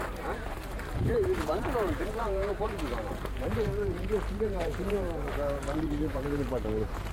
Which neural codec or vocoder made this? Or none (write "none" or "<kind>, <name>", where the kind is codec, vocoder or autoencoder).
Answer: vocoder, BigVGAN v2